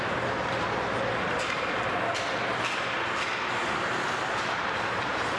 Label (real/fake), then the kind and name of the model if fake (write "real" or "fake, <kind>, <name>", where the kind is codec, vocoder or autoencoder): real